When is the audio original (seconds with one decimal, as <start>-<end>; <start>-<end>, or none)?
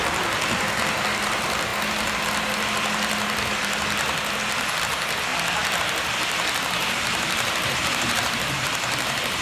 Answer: 0.0-6.8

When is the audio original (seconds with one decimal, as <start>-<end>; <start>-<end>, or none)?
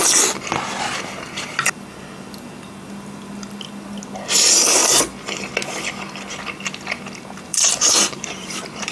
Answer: 0.0-7.5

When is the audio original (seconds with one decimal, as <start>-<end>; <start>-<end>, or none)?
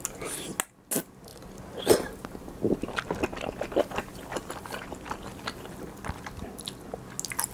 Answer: 0.0-7.5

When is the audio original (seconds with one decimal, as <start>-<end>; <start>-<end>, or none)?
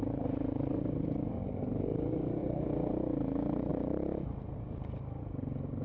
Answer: 0.0-2.4; 2.9-3.7; 5.2-5.8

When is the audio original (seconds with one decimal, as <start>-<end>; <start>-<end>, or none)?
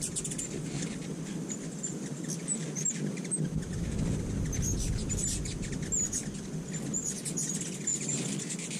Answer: 2.6-7.4